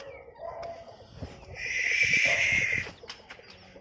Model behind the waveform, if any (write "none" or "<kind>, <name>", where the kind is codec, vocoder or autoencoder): none